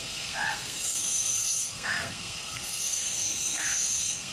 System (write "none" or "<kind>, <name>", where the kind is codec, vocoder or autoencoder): codec, SNAC